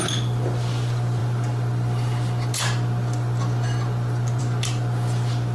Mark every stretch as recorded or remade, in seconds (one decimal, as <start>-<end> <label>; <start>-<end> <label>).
0.0-5.5 recorded